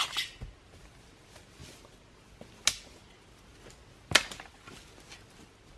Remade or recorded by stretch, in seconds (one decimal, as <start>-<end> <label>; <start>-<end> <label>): 0.0-5.8 recorded